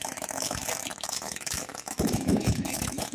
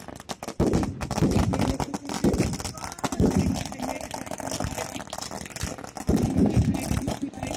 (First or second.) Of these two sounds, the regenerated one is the first